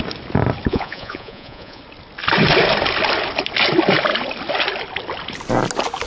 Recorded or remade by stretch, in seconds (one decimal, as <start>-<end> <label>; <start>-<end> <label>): 0.0-0.7 recorded; 0.7-1.8 remade; 1.8-6.1 recorded